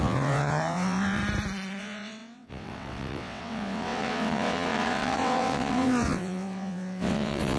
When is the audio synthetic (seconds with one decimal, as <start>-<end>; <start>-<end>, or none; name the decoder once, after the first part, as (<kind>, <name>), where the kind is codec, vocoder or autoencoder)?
0.0-1.2 (vocoder, WaveNeXt); 1.8-7.6